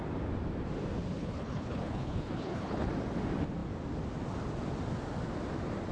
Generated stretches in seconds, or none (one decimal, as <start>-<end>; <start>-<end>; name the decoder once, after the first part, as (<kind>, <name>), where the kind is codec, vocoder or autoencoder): 1.2-2.9 (codec, HILCodec)